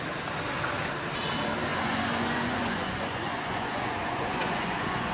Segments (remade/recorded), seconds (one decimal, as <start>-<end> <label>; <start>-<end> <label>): 0.0-1.7 recorded; 1.7-5.1 remade